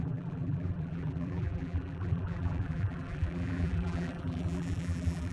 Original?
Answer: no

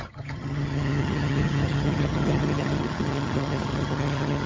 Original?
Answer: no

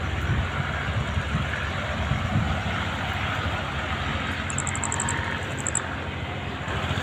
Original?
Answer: yes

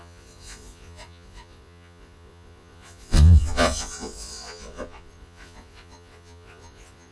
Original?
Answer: no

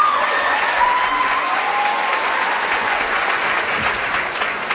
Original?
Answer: no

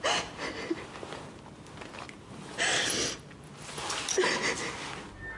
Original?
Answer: yes